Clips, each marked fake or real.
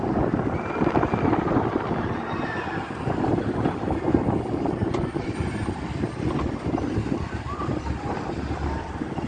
real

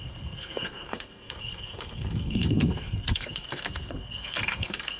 fake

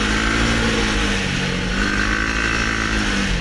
real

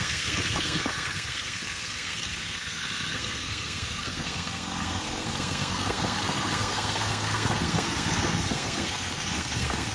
fake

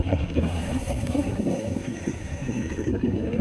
fake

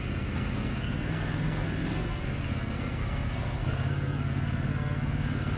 fake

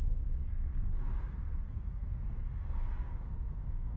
fake